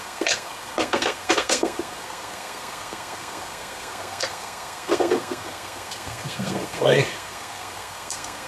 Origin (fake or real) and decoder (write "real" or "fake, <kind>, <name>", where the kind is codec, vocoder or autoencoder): fake, codec, SNAC